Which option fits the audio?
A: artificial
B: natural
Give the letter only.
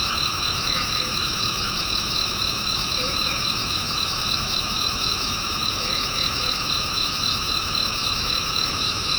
A